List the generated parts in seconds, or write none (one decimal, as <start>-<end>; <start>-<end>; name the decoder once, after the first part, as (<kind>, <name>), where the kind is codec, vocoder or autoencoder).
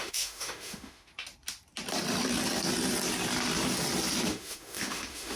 0.0-1.1 (autoencoder, DAC-VAE); 4.3-5.4